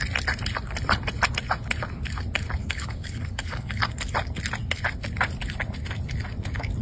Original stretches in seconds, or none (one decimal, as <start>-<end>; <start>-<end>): 0.0-2.6; 3.8-6.8